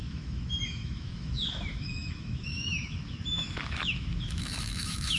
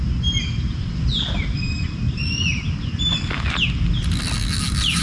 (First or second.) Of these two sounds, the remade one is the first